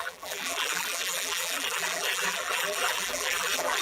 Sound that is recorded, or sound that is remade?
remade